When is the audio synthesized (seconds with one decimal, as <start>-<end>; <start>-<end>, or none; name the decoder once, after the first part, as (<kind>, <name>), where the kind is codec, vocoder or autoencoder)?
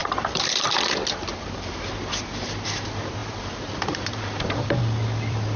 0.0-0.7 (vocoder, BigVGAN v2); 1.3-1.8; 3.2-4.8